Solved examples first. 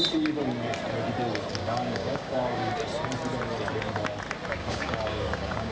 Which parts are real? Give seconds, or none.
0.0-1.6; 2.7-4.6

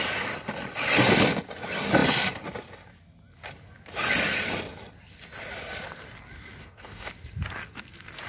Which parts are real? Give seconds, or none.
0.0-6.6; 7.1-8.3

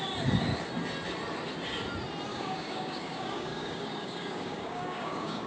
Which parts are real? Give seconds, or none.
0.0-2.3

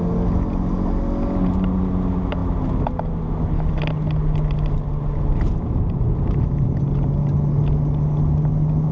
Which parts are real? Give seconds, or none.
0.0-8.9

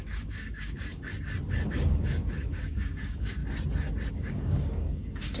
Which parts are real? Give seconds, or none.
1.1-1.7; 3.4-4.1

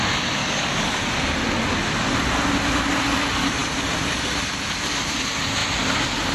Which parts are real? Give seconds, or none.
0.0-0.4; 1.0-6.3